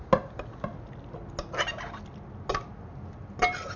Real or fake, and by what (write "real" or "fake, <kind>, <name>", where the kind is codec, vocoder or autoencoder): real